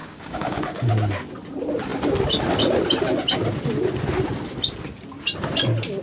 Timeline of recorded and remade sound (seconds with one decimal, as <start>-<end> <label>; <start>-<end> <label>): 0.0-0.9 remade; 0.9-6.0 recorded